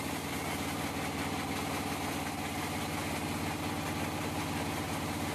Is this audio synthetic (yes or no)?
no